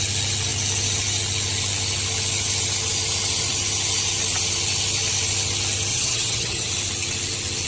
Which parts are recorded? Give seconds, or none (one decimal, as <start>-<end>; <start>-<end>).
0.0-5.9; 6.7-7.7